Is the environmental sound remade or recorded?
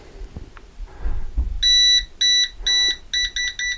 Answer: recorded